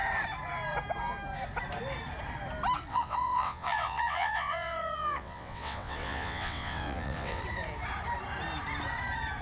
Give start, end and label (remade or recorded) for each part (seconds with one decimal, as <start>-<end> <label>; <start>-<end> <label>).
0.0-2.9 recorded; 2.9-7.4 remade; 7.4-9.4 recorded